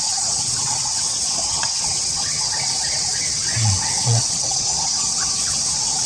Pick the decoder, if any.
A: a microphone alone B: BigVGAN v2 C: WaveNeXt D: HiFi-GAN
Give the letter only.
C